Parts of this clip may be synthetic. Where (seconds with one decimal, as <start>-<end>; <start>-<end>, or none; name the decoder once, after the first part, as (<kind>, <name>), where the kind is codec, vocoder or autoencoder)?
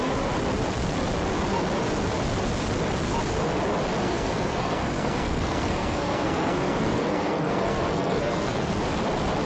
4.0-8.8 (codec, SNAC)